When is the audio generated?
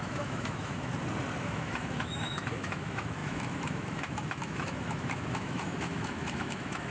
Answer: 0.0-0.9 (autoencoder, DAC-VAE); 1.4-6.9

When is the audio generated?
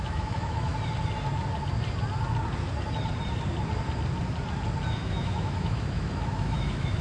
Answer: 0.0-0.7 (autoencoder, DAC-VAE); 4.9-7.0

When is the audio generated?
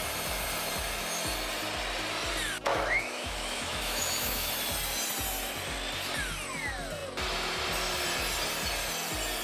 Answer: 2.7-4.5 (autoencoder, DAC-VAE)